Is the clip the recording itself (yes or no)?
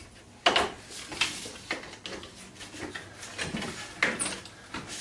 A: yes